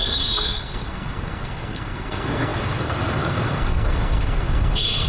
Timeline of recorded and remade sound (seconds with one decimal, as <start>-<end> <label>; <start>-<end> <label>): 0.0-5.1 remade